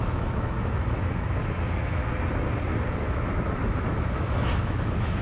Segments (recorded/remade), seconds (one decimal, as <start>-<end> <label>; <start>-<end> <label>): 0.0-2.0 remade; 2.0-3.0 recorded; 3.0-5.2 remade